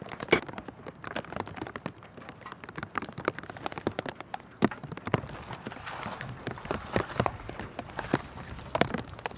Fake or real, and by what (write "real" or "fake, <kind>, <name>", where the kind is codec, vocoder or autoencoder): real